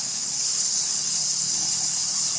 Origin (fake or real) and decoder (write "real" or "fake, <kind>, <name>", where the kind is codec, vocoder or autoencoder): fake, codec, HILCodec